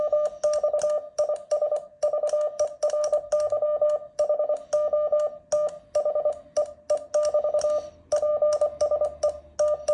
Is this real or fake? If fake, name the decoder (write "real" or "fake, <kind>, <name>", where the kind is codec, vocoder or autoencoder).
real